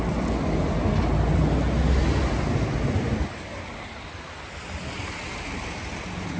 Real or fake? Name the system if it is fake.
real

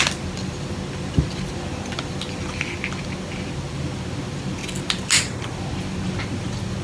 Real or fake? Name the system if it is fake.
real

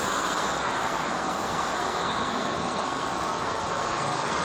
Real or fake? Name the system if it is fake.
fake, codec, SNAC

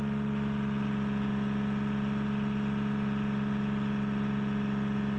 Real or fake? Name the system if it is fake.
real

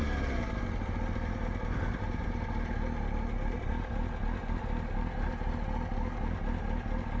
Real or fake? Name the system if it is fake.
real